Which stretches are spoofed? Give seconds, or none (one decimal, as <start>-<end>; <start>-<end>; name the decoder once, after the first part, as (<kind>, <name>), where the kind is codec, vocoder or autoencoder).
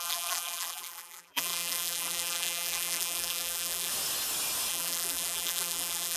0.0-3.9 (vocoder, BigVGAN v2); 4.7-6.2